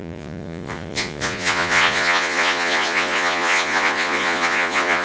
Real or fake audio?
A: fake